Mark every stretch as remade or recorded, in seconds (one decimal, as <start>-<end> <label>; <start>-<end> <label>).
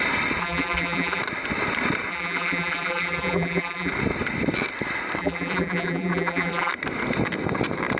0.0-0.4 recorded; 0.4-1.2 remade; 1.2-2.1 recorded; 2.1-3.9 remade; 3.9-5.2 recorded; 5.2-6.7 remade; 6.7-8.0 recorded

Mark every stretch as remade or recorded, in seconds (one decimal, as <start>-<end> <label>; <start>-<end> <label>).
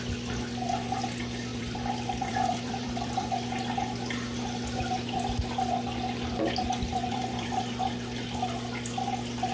0.0-1.5 recorded; 1.5-3.3 remade; 3.3-6.9 recorded; 6.9-7.6 remade; 7.6-9.5 recorded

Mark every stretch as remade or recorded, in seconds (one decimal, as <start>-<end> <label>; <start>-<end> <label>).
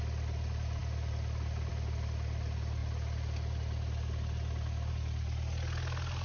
0.0-6.2 recorded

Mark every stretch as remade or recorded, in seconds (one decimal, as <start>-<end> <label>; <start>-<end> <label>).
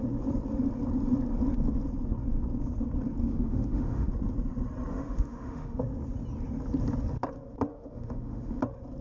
0.0-3.2 recorded; 3.2-4.1 remade; 4.1-4.9 recorded; 4.9-5.8 remade; 5.8-7.7 recorded; 7.7-8.6 remade; 8.6-9.0 recorded